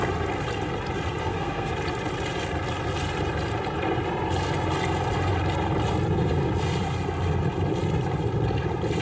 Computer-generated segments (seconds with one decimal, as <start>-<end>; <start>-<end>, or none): 1.2-1.7